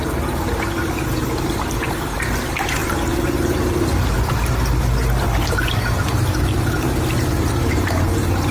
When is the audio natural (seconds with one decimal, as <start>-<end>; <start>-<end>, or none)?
2.8-5.7